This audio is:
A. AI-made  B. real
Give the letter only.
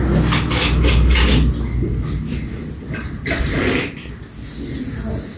B